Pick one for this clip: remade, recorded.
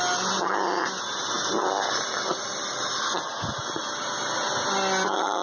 recorded